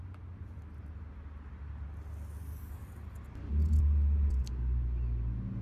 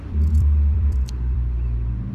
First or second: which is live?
first